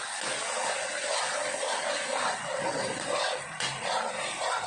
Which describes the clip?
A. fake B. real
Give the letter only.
B